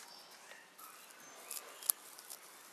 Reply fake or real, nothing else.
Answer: real